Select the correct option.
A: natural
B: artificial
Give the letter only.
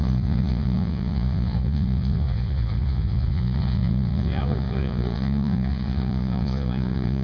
B